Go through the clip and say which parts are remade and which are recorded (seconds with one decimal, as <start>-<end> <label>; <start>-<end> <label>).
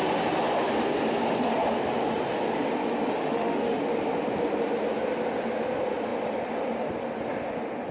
0.0-3.2 recorded; 3.2-3.8 remade; 3.8-7.9 recorded